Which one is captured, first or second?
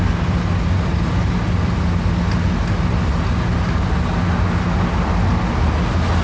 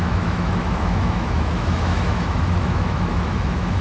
first